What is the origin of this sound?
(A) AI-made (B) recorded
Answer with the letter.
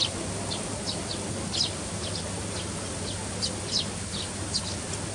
B